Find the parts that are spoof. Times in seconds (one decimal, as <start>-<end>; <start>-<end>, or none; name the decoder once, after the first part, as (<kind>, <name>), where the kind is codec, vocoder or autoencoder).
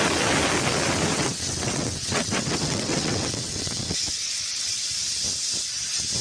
1.1-4.8 (vocoder, WaveNeXt)